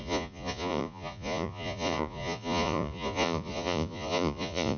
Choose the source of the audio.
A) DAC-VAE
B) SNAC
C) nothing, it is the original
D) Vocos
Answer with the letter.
D